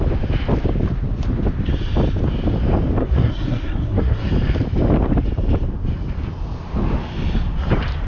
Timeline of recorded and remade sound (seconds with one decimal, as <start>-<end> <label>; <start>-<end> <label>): 0.0-3.0 recorded; 3.0-4.3 remade; 4.3-8.1 recorded